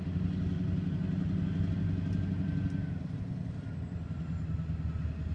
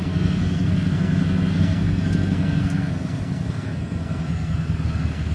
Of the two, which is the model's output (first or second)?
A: second